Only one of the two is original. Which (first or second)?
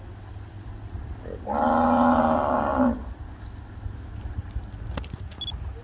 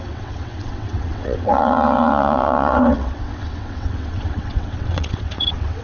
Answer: first